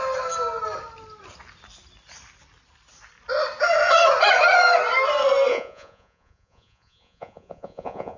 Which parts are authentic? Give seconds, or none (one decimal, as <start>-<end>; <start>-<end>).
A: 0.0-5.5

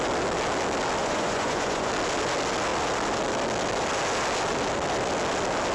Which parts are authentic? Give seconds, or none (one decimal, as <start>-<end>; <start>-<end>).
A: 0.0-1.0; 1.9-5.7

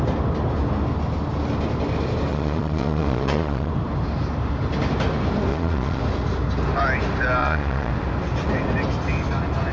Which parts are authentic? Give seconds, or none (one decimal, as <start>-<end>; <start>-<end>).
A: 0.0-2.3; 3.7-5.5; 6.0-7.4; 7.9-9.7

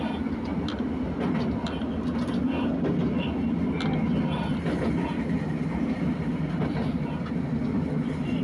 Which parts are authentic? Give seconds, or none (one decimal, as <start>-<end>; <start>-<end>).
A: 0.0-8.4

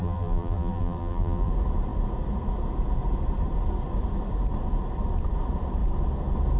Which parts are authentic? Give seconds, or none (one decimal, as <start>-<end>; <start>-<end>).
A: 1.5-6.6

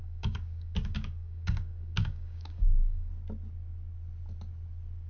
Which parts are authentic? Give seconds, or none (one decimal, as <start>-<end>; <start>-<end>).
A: 3.1-5.1